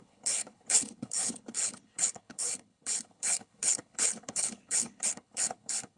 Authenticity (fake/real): fake